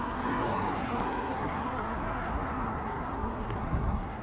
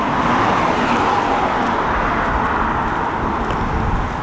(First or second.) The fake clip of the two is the first